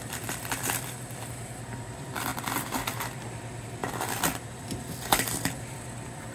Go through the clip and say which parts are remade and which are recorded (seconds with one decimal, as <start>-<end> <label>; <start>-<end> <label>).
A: 0.0-6.3 remade